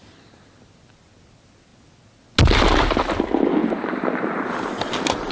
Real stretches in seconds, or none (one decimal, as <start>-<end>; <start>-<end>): 0.0-3.6; 4.7-5.3